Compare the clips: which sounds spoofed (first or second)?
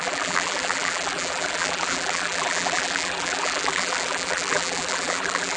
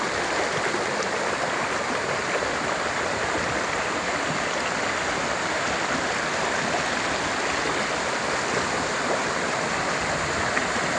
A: first